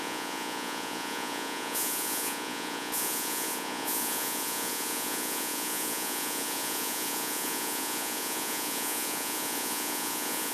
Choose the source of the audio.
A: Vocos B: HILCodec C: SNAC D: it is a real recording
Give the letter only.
A